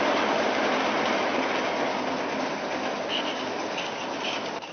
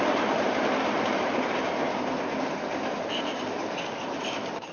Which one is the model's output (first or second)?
second